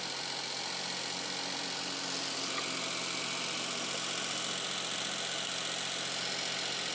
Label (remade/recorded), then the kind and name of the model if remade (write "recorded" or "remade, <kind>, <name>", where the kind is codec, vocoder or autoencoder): recorded